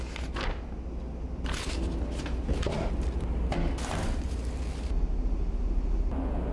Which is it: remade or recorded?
recorded